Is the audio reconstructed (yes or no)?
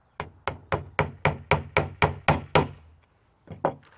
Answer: no